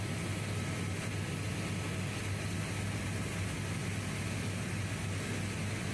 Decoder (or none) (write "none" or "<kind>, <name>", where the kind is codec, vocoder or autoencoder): none